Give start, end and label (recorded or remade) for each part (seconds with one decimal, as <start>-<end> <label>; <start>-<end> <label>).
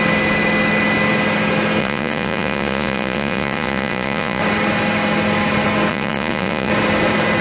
0.0-1.8 recorded; 1.8-4.4 remade; 4.4-5.9 recorded; 5.9-6.7 remade; 6.7-7.4 recorded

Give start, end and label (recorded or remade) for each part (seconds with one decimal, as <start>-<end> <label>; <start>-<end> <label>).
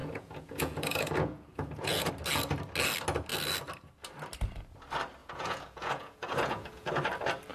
0.0-2.1 remade; 2.1-5.2 recorded; 5.2-6.9 remade; 6.9-7.5 recorded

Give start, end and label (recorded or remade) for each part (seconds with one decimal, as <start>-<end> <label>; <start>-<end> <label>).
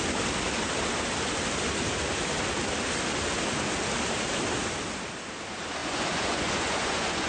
0.0-5.8 recorded; 5.8-7.3 remade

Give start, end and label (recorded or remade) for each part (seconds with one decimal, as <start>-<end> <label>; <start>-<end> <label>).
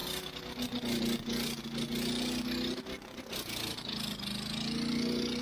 0.0-5.4 recorded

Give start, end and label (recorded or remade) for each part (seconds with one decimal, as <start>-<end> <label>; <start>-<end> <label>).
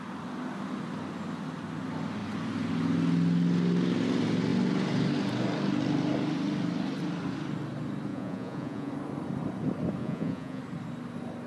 0.0-8.1 recorded; 8.1-8.9 remade; 8.9-10.0 recorded; 10.0-10.6 remade; 10.6-11.5 recorded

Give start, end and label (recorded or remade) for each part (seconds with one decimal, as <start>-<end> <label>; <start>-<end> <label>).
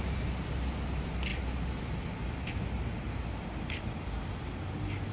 0.0-5.1 recorded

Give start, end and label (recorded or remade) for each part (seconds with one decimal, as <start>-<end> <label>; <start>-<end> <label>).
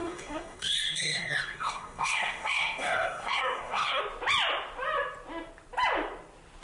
0.0-4.0 remade; 4.0-6.6 recorded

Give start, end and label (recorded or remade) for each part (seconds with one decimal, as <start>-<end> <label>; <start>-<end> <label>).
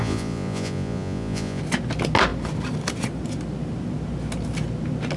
0.0-1.6 remade; 1.6-5.2 recorded